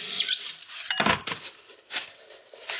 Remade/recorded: recorded